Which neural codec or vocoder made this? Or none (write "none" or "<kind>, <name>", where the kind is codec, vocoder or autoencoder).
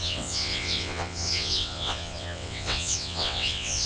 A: vocoder, WaveNeXt